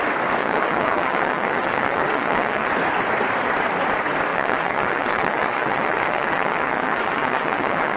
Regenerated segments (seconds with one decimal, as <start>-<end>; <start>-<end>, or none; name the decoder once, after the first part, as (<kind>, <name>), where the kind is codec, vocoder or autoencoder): 0.4-2.7 (vocoder, WaveNeXt); 4.3-8.0